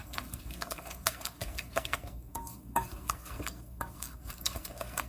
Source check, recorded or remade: remade